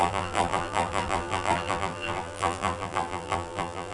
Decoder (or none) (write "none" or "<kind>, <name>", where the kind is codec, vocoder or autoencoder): vocoder, BigVGAN v2